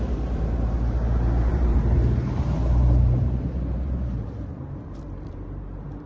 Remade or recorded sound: remade